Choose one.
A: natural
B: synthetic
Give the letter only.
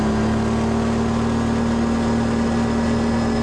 A